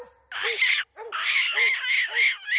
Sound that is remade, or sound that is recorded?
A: recorded